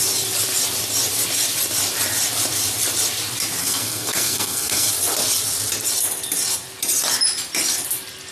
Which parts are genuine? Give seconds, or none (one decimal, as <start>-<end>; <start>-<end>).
0.0-3.6; 4.9-8.3